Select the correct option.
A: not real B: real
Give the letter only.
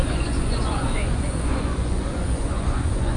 A